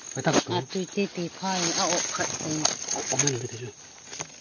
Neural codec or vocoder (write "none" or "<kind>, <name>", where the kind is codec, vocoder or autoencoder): none